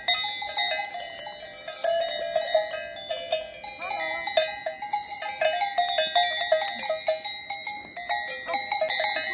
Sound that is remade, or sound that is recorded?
recorded